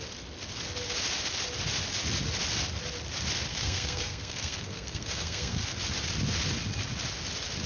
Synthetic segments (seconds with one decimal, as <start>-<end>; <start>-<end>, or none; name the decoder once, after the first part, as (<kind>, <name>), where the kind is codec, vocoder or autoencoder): 3.5-5.6 (codec, SNAC)

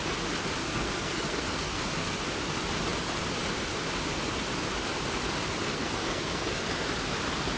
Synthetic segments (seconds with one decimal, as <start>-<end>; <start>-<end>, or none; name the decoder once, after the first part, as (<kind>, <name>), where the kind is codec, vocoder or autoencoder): 0.6-2.2 (codec, SNAC); 5.7-6.7

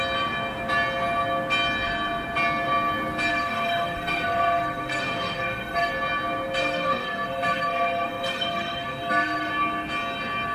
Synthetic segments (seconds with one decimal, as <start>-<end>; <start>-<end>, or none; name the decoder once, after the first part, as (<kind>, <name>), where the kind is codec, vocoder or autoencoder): 3.3-5.9 (codec, SNAC); 6.6-9.5

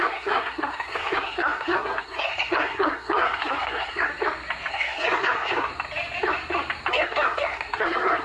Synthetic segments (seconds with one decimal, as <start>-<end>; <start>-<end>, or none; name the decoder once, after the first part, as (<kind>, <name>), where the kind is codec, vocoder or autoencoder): 0.0-4.1 (codec, SNAC); 4.7-5.7; 6.9-8.2

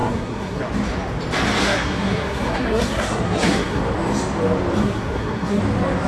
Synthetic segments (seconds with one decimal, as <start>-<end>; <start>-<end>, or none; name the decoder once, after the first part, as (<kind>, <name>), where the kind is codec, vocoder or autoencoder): 0.0-0.6 (codec, SNAC); 1.6-3.8; 4.8-5.6

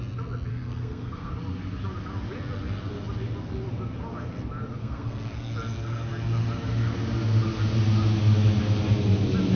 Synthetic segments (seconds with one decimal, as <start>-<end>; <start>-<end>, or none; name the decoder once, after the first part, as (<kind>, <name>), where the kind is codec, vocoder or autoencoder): 0.5-1.3 (codec, SNAC); 4.8-5.5

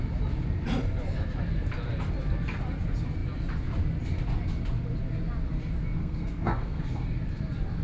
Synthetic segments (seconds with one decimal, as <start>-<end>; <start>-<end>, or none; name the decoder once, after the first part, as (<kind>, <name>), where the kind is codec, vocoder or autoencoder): 6.0-6.8 (codec, SNAC)